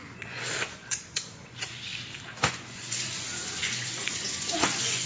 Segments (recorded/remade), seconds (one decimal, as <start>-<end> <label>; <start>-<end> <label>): 0.0-1.9 remade; 1.9-2.5 recorded; 2.5-5.1 remade